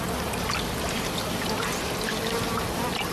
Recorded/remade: remade